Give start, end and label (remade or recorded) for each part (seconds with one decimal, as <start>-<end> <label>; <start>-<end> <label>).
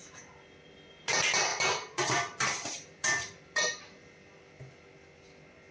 0.0-1.5 recorded; 1.5-4.5 remade; 4.5-5.7 recorded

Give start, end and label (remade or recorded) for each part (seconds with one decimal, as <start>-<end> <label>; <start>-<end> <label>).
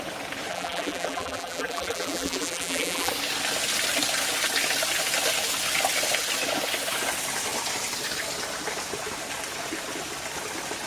0.0-0.5 recorded; 0.5-3.1 remade; 3.1-10.9 recorded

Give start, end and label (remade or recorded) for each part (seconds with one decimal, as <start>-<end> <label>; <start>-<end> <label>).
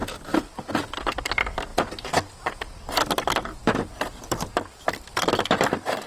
0.0-6.1 recorded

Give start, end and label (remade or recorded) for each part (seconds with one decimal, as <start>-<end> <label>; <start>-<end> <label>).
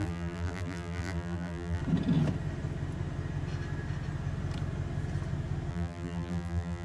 0.0-1.8 remade; 1.8-5.7 recorded; 5.7-6.8 remade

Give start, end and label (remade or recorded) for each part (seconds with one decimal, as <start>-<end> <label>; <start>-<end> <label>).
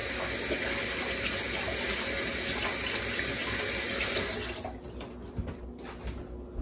0.0-6.6 recorded